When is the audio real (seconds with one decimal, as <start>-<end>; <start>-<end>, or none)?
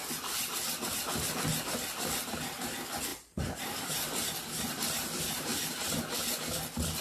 0.0-3.1; 6.0-7.0